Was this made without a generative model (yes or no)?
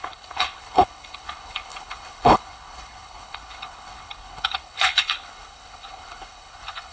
no